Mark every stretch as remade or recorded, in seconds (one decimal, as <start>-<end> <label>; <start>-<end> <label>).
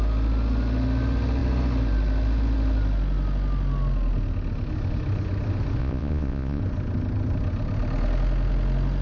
0.0-5.8 recorded; 5.8-6.6 remade; 6.6-9.0 recorded